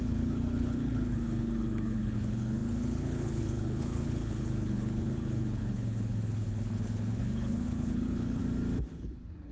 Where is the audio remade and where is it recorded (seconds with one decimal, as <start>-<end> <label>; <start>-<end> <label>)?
0.0-8.4 remade; 8.4-8.9 recorded; 8.9-9.5 remade